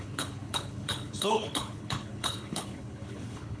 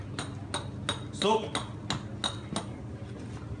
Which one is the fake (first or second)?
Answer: first